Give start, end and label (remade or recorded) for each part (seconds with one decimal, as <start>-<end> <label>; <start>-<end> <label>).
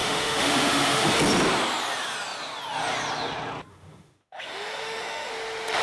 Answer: 0.0-1.1 remade; 1.1-3.7 recorded; 3.7-5.3 remade; 5.3-5.8 recorded